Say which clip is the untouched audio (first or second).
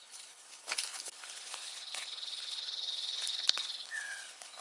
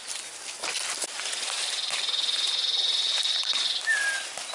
second